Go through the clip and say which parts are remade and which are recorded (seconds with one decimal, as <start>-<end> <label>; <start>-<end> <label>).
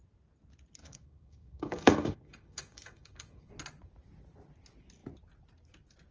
0.0-0.8 recorded; 0.8-3.5 remade; 3.5-6.1 recorded